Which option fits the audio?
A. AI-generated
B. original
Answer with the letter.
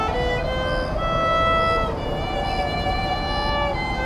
B